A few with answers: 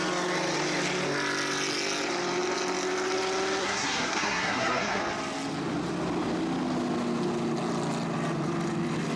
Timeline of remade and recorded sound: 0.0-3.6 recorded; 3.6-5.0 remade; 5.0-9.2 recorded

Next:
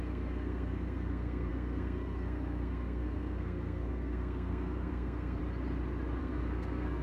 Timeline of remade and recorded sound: 0.0-5.4 remade; 5.4-6.2 recorded; 6.2-7.0 remade

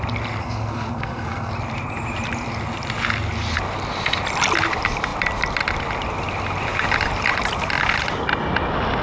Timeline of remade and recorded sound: 0.0-0.4 recorded; 0.4-1.5 remade; 1.5-9.0 recorded

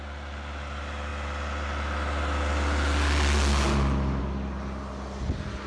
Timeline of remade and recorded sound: 0.0-5.7 recorded